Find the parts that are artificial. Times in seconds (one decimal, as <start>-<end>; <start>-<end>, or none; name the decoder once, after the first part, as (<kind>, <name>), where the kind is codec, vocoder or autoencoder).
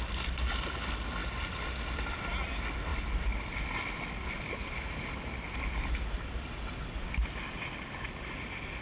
none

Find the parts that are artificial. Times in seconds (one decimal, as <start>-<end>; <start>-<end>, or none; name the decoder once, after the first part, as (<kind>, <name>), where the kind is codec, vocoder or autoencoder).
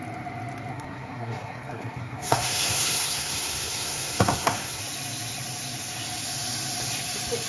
0.7-4.8 (codec, SNAC)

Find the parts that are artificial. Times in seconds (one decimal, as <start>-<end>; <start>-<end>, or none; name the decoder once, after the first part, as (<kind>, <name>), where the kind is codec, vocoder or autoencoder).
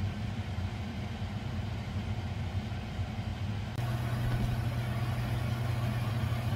0.0-3.3 (vocoder, BigVGAN v2); 6.1-6.6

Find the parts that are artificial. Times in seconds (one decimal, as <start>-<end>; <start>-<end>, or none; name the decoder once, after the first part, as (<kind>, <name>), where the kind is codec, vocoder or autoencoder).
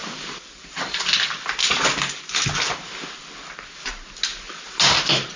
0.0-3.2 (vocoder, BigVGAN v2); 4.3-4.8